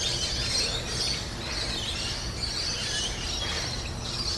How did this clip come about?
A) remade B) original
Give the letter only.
B